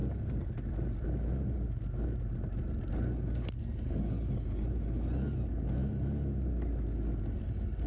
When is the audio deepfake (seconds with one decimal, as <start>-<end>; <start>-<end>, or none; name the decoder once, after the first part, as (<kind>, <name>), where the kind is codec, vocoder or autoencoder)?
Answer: none